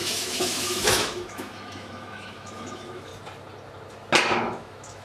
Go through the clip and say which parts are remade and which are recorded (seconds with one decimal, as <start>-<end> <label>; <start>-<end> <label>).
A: 0.0-3.1 remade; 3.1-4.4 recorded; 4.4-5.0 remade